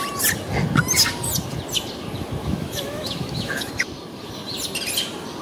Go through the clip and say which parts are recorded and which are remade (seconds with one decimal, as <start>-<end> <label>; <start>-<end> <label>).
0.0-2.4 recorded; 2.4-3.7 remade; 3.7-5.4 recorded